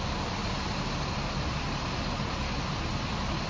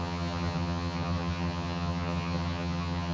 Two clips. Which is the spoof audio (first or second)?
second